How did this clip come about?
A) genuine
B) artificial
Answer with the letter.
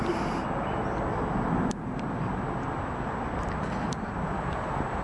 A